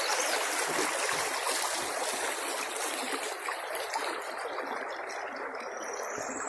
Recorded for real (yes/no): yes